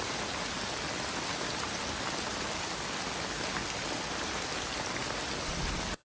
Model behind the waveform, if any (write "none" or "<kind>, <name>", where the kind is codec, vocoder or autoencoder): none